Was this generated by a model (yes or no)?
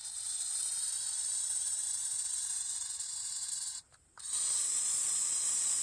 yes